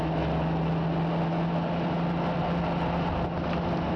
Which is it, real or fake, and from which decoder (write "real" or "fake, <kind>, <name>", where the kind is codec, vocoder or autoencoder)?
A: real